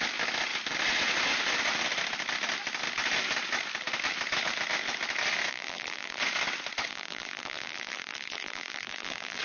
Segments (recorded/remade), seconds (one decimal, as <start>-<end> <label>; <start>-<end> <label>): 0.0-5.5 recorded; 5.5-6.2 remade; 6.2-6.9 recorded; 6.9-9.4 remade